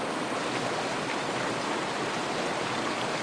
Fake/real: real